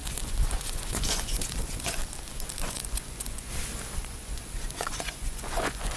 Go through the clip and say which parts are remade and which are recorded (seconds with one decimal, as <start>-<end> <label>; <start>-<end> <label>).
0.0-2.0 remade; 2.0-2.6 recorded; 2.6-3.5 remade; 3.5-4.0 recorded; 4.0-6.0 remade